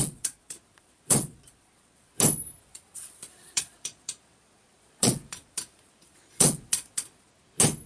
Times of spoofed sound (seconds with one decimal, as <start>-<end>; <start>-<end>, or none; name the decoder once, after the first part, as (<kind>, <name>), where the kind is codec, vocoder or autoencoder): 0.0-2.2 (vocoder, Vocos); 2.6-7.3